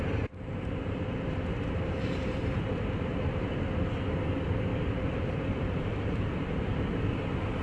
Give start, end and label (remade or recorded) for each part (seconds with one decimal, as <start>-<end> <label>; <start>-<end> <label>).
0.0-3.7 remade; 3.7-4.7 recorded; 4.7-7.0 remade; 7.0-7.6 recorded